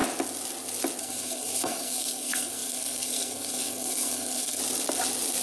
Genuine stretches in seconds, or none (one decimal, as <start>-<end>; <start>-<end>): 0.0-1.0; 4.6-5.4